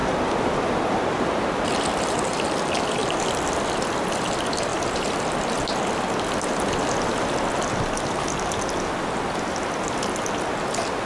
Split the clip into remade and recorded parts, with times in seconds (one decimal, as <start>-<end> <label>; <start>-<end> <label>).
0.0-11.1 recorded